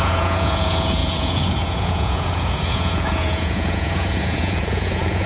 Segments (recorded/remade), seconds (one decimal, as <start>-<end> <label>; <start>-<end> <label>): 0.0-5.3 remade